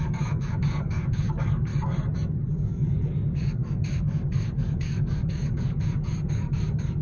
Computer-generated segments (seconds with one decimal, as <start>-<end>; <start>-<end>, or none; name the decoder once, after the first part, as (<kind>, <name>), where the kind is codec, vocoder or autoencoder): 0.0-1.7 (codec, DAC); 2.5-7.0